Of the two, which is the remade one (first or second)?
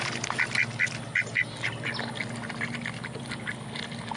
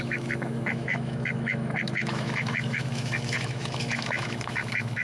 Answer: second